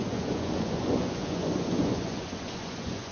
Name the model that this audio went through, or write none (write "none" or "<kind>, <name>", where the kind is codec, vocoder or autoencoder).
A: vocoder, Vocos